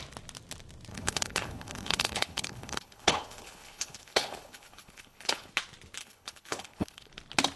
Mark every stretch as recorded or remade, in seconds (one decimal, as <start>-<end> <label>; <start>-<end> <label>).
0.0-0.9 recorded; 0.9-5.5 remade; 5.5-6.0 recorded; 6.0-7.1 remade; 7.1-7.6 recorded